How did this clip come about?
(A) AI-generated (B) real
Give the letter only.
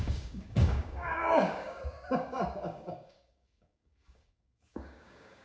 A